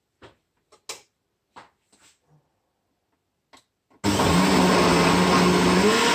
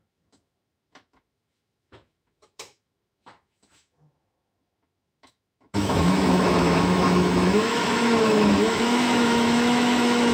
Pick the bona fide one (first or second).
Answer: first